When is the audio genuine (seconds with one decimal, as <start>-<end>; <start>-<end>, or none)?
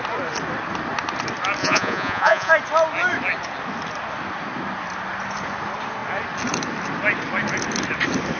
0.0-1.6; 2.5-8.4